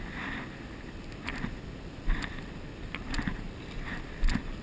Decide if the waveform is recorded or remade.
recorded